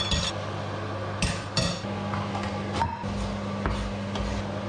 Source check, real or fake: real